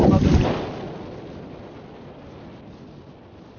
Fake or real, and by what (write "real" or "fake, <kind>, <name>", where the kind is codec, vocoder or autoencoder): real